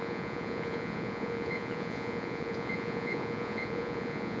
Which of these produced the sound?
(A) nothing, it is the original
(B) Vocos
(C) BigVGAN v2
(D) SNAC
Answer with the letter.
B